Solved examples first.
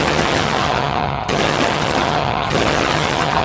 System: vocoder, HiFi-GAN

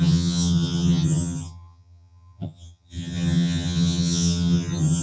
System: vocoder, HiFi-GAN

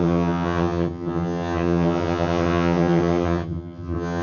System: vocoder, HiFi-GAN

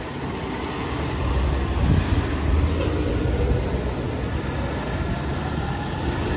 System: none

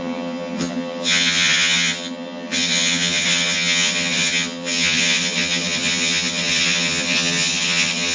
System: vocoder, HiFi-GAN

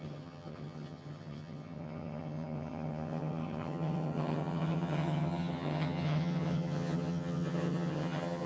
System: vocoder, HiFi-GAN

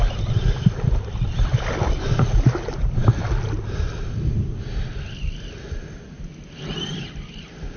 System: none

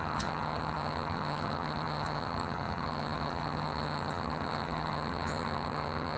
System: vocoder, HiFi-GAN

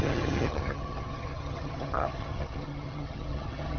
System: vocoder, HiFi-GAN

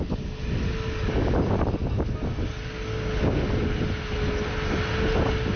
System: none